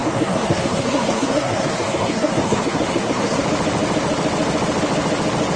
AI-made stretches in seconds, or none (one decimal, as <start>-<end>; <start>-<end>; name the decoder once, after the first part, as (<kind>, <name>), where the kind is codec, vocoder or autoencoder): 0.0-3.4 (codec, SNAC)